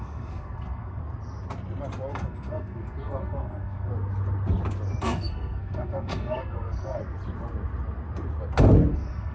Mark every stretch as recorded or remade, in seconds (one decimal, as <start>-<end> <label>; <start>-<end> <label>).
0.0-1.0 remade; 1.0-2.1 recorded; 2.1-3.9 remade; 3.9-5.0 recorded; 5.0-7.0 remade; 7.0-8.9 recorded; 8.9-9.3 remade